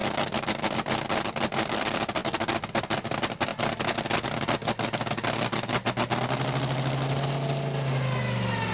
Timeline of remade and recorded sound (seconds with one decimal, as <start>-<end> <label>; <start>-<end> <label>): 0.0-8.7 recorded

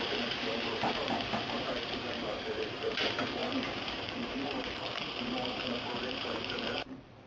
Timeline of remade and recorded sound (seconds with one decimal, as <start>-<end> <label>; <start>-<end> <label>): 0.0-7.3 remade

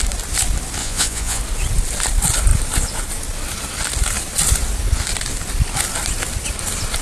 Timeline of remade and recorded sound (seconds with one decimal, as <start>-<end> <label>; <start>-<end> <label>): 0.0-0.8 recorded; 0.8-1.4 remade; 1.4-7.0 recorded